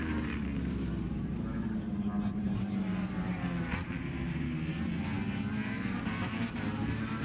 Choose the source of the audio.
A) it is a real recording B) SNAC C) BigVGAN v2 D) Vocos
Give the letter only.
C